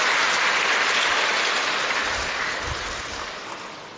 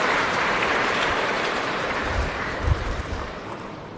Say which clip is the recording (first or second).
first